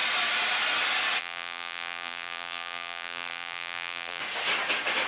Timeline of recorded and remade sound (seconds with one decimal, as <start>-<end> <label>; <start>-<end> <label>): 0.0-1.2 recorded; 1.2-4.2 remade; 4.2-5.1 recorded